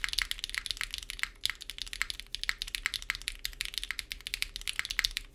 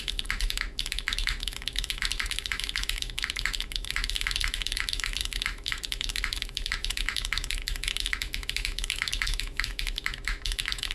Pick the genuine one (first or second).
first